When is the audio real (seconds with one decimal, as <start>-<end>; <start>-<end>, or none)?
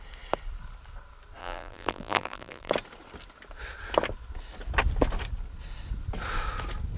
0.0-1.4; 2.7-7.0